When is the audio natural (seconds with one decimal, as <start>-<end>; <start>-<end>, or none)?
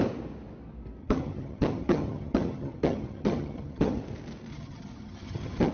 0.0-1.0; 4.0-4.5